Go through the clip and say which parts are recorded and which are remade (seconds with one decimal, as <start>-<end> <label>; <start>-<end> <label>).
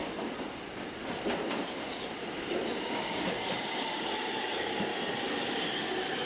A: 0.0-2.8 recorded; 2.8-4.9 remade; 4.9-5.4 recorded; 5.4-6.3 remade